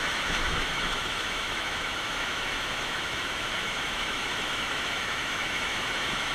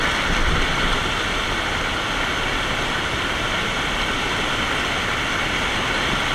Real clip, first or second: second